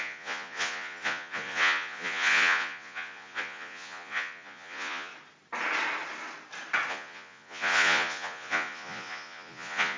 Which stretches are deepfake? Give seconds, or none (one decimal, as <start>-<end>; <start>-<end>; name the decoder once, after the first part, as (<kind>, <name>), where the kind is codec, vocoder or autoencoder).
0.0-5.1 (vocoder, Vocos); 6.9-10.0